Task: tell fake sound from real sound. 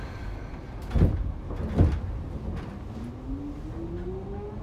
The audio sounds real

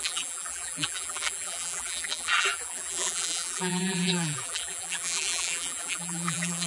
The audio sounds fake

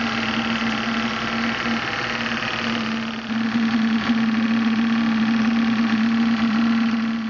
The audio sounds real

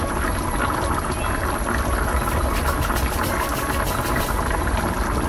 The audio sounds real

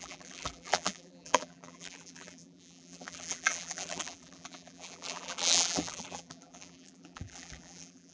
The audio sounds fake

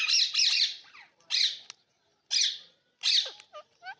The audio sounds real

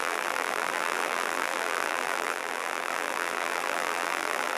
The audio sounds fake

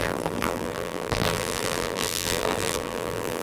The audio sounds fake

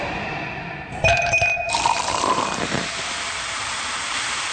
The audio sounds fake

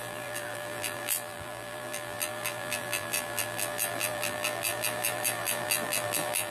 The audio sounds fake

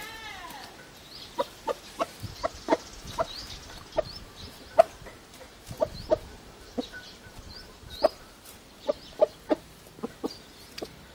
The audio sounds fake